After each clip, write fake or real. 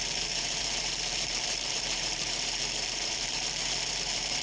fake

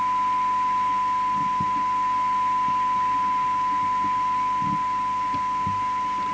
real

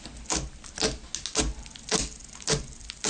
real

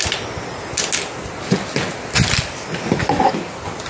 real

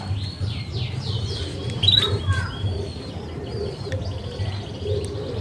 real